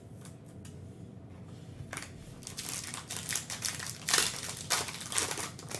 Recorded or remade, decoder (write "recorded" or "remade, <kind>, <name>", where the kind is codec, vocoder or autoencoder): recorded